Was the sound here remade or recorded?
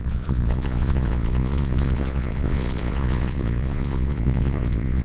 remade